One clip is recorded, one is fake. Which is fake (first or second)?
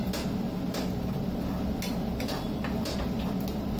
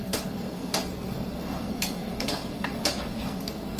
second